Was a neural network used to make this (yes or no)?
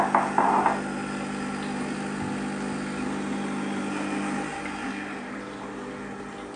no